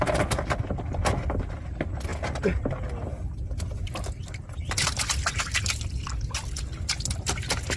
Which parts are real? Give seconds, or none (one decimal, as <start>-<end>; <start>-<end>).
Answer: 0.0-7.8